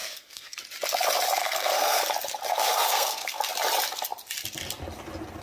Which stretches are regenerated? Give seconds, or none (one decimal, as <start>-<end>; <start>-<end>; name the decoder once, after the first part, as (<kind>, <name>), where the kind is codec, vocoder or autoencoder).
0.0-0.6 (codec, SNAC); 1.4-2.0; 2.5-3.4